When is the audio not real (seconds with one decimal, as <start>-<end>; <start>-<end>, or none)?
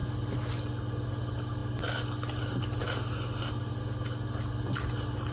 none